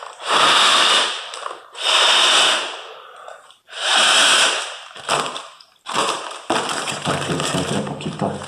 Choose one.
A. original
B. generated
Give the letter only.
B